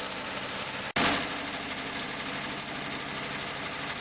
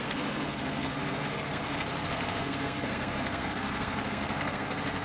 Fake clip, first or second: second